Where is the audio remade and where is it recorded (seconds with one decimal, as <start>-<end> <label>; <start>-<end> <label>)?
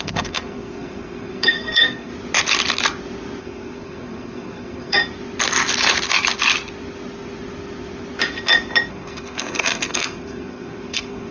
0.0-2.1 remade; 2.1-3.4 recorded; 3.4-5.0 remade; 5.0-8.9 recorded; 8.9-11.3 remade